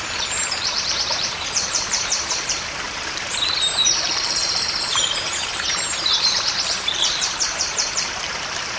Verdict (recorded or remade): remade